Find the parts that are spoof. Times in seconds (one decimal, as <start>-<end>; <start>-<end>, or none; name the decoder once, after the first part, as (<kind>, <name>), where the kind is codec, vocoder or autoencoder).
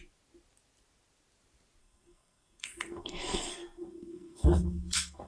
1.8-5.3 (codec, SNAC)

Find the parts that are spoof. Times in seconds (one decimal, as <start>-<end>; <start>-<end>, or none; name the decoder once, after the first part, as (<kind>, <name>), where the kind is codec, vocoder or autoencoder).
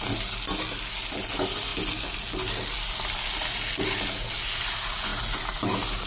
none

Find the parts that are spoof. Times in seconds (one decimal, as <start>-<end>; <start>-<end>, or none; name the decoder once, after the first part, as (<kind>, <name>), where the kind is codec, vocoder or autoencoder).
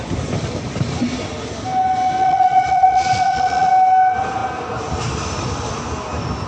2.2-3.7 (vocoder, Vocos)